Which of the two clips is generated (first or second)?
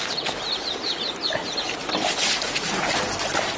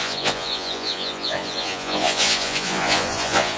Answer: second